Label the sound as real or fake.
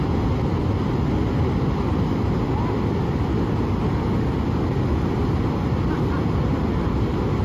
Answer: real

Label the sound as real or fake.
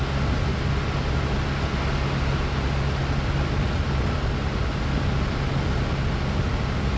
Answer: real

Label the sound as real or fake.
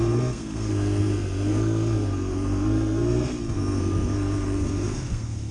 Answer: fake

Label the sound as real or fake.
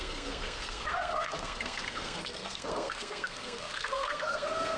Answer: fake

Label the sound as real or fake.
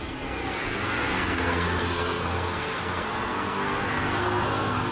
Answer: fake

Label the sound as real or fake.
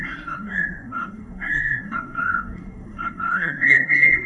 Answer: fake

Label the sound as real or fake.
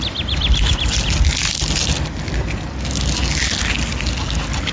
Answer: real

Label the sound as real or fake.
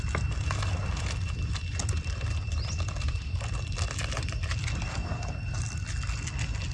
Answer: real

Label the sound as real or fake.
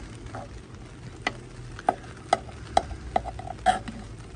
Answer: real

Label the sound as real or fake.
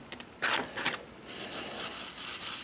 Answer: real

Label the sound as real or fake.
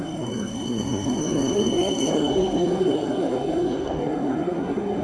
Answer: fake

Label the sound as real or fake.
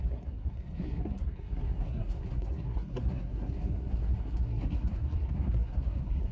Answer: fake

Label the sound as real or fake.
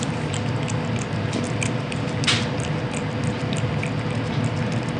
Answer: real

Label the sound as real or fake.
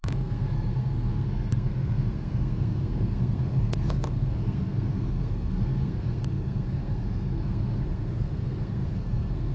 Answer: fake